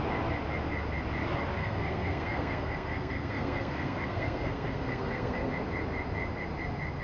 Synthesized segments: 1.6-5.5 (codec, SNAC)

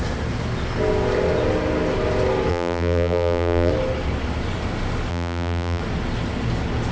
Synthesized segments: 2.5-3.7 (vocoder, BigVGAN v2); 5.1-5.8

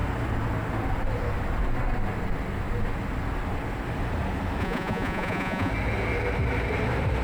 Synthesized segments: 4.6-5.7 (vocoder, Vocos)

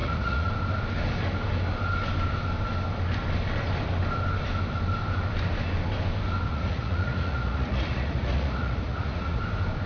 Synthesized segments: 0.0-0.5 (vocoder, Vocos); 6.5-9.4

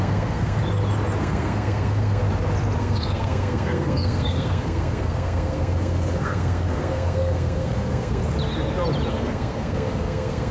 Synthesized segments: 0.0-0.6 (codec, SNAC); 1.2-2.2; 2.8-8.2; 9.1-10.5